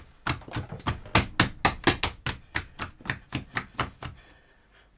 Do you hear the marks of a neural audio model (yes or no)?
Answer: no